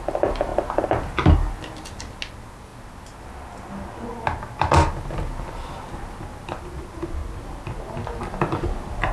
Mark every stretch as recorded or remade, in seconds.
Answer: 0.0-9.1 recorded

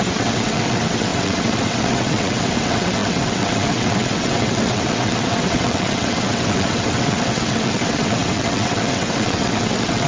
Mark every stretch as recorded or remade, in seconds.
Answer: 0.0-10.1 remade

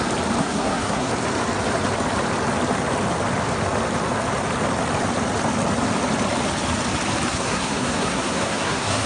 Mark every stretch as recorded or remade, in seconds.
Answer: 0.0-0.4 recorded; 0.4-1.1 remade; 1.1-7.3 recorded; 7.3-9.1 remade

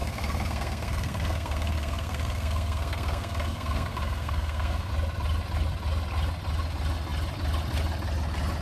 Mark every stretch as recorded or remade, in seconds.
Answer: 0.0-4.9 remade; 4.9-8.6 recorded

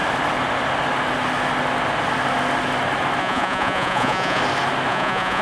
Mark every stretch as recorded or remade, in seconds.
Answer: 0.0-3.2 recorded; 3.2-4.4 remade; 4.4-4.9 recorded; 4.9-5.4 remade

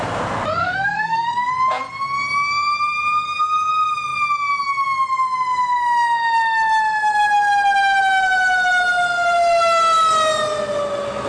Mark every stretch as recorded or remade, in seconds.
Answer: 0.0-0.6 recorded; 0.6-1.5 remade; 1.5-11.3 recorded